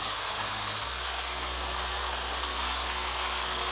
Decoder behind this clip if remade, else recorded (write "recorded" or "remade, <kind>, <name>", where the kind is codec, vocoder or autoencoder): remade, codec, SNAC